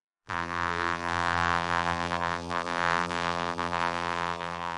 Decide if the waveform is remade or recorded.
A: remade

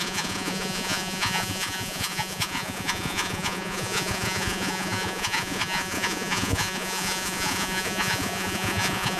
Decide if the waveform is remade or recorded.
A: remade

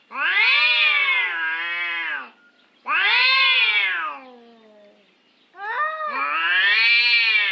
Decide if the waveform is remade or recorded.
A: recorded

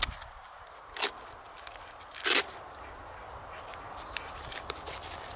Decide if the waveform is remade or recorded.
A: recorded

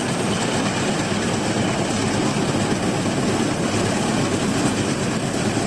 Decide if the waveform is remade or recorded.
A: recorded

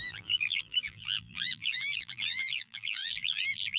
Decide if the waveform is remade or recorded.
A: remade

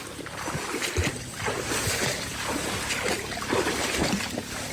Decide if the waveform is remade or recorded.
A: recorded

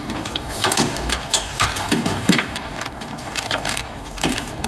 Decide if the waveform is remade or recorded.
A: remade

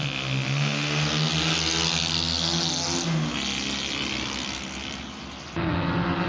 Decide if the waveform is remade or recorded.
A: recorded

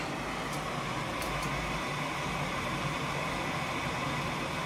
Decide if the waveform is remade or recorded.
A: recorded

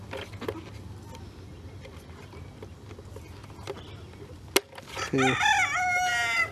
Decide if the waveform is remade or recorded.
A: recorded